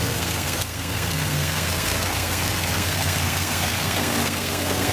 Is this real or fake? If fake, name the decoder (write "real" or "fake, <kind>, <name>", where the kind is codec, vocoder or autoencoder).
fake, codec, SNAC